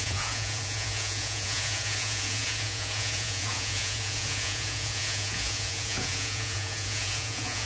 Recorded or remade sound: remade